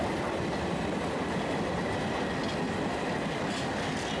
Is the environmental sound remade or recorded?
recorded